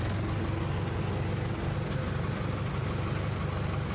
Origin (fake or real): real